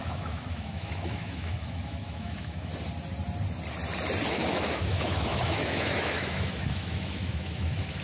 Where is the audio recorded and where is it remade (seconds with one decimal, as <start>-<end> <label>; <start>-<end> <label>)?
0.0-2.7 remade; 2.7-4.3 recorded; 4.3-8.0 remade

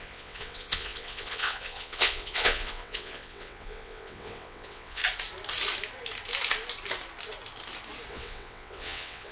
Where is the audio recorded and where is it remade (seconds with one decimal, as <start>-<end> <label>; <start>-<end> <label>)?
0.0-5.0 remade; 5.0-8.1 recorded; 8.1-9.3 remade